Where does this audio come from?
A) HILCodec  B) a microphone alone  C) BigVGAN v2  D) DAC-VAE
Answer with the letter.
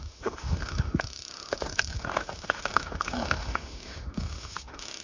D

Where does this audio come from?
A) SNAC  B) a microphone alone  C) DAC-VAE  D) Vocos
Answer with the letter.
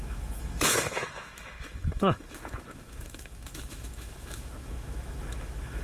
C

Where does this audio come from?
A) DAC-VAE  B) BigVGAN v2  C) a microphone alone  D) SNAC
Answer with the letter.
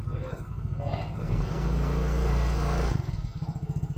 D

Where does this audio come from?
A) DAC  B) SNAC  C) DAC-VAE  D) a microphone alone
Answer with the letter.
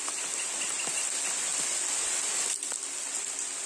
D